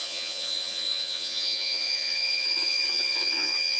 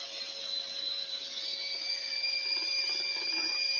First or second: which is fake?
first